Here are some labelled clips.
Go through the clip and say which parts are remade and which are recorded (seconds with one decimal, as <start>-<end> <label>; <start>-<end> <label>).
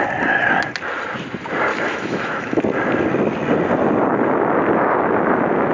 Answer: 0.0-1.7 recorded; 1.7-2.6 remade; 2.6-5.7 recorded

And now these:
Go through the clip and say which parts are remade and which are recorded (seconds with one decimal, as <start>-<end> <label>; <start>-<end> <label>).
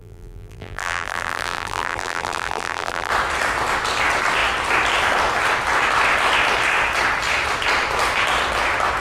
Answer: 0.0-3.1 remade; 3.1-9.0 recorded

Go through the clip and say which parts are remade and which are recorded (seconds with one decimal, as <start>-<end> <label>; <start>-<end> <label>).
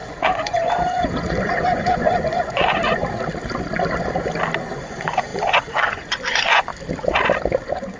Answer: 0.0-3.0 remade; 3.0-4.6 recorded; 4.6-6.7 remade; 6.7-7.6 recorded; 7.6-8.0 remade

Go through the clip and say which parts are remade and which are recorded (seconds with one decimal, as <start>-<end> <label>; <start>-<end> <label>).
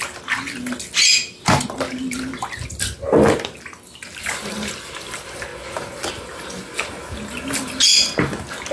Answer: 0.0-8.7 recorded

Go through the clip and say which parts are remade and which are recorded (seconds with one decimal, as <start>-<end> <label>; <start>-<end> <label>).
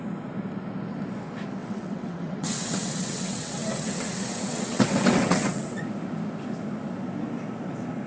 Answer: 0.0-1.6 recorded; 1.6-5.8 remade; 5.8-8.1 recorded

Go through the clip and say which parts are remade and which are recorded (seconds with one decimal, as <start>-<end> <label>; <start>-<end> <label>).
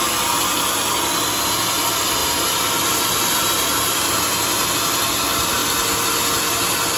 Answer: 0.0-2.2 recorded; 2.2-4.7 remade; 4.7-7.0 recorded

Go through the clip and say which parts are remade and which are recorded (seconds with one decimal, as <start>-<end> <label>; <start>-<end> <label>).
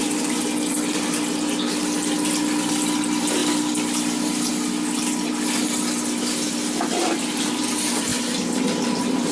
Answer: 0.0-9.3 recorded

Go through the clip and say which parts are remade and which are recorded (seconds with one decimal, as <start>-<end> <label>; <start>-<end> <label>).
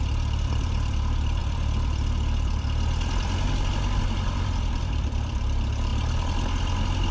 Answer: 0.0-5.9 remade; 5.9-7.1 recorded